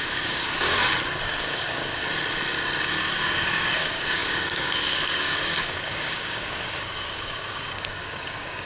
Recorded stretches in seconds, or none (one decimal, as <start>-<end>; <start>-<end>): 0.8-1.4; 2.0-3.1